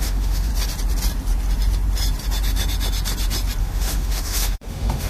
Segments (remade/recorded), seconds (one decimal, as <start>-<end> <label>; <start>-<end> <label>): 0.0-0.5 remade; 0.5-3.6 recorded; 3.6-5.1 remade